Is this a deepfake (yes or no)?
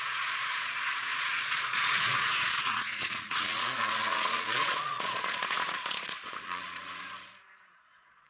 yes